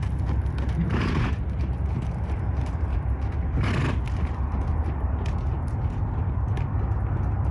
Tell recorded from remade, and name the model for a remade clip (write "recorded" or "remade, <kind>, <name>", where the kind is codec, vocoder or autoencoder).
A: recorded